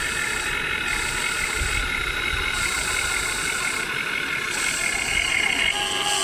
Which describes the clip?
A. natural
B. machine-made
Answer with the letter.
A